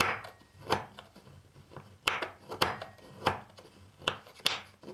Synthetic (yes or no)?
yes